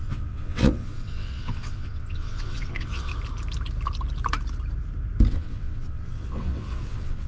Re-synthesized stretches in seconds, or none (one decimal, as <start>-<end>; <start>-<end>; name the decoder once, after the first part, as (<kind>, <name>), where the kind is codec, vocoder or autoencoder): 0.0-3.1 (vocoder, WaveNeXt); 5.3-7.3